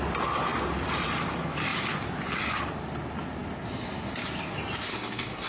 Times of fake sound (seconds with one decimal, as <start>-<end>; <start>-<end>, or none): 4.9-5.5